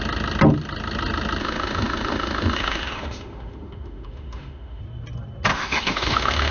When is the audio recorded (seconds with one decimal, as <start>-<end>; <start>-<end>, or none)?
0.0-1.4; 4.8-5.5